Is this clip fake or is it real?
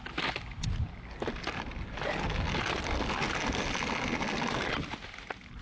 real